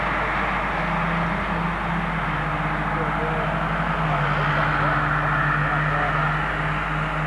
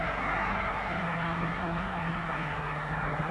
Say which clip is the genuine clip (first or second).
first